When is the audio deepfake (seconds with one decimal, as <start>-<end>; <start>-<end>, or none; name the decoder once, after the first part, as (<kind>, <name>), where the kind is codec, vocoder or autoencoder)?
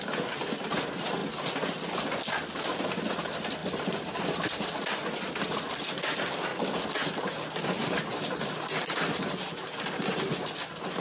0.0-1.2 (vocoder, BigVGAN v2); 3.2-6.5